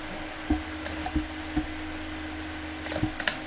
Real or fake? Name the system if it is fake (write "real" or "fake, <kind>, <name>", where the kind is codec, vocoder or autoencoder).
real